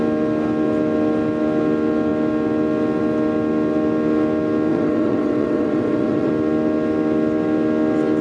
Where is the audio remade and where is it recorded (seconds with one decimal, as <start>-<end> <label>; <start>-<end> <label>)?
0.0-4.7 recorded; 4.7-6.3 remade; 6.3-8.2 recorded